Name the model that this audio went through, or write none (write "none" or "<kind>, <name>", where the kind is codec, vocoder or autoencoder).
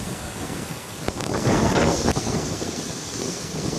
codec, SNAC